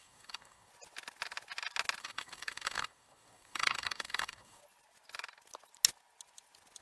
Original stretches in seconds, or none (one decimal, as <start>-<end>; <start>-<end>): 0.7-2.0; 4.6-6.8